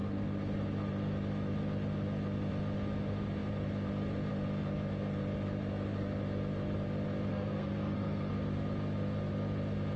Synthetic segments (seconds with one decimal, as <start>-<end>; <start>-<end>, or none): 7.3-8.3